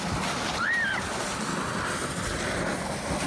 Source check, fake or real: real